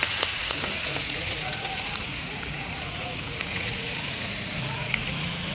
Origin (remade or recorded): remade